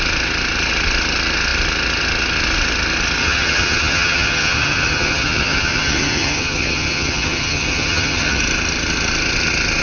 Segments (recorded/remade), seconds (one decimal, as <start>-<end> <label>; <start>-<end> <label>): 0.0-3.2 recorded; 3.2-8.4 remade; 8.4-9.8 recorded